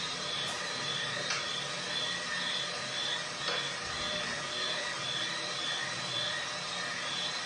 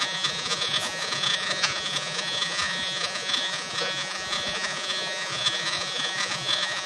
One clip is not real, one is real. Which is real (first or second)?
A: first